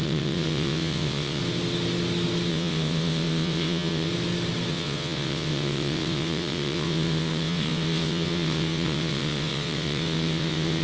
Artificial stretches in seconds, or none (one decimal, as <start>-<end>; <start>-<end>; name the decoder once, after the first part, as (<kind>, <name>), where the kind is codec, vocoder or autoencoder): 0.0-1.4 (vocoder, WaveNeXt); 2.5-4.1; 4.7-10.8